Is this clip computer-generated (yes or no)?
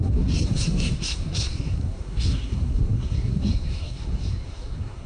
yes